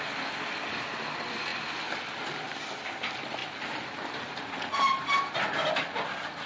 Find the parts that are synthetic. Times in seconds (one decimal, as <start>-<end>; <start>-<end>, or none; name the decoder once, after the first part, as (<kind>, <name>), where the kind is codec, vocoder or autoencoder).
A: none